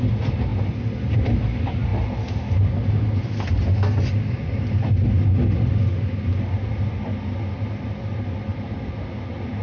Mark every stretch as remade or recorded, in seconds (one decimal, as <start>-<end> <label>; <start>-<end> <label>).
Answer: 0.0-9.6 recorded